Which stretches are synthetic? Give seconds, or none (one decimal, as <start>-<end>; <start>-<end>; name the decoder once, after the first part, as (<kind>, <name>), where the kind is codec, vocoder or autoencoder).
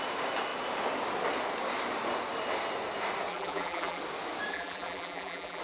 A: 3.3-4.0 (vocoder, BigVGAN v2); 4.5-5.6